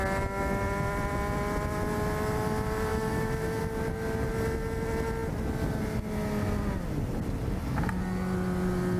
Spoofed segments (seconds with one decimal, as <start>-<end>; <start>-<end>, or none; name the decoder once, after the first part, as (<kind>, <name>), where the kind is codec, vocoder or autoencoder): 2.9-3.6 (autoencoder, DAC-VAE)